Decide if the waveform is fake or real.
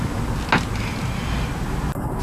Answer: real